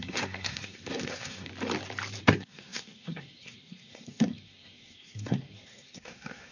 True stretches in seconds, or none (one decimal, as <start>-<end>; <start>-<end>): 1.5-2.2